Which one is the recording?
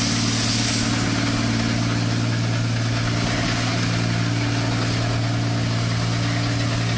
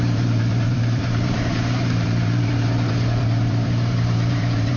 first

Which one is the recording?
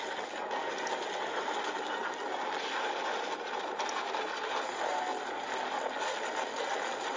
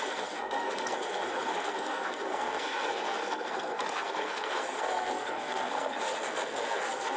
first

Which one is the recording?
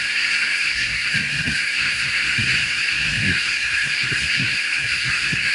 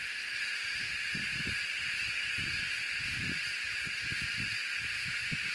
second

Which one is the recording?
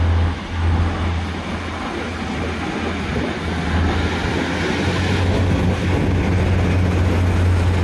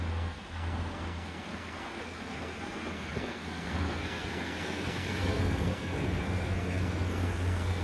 first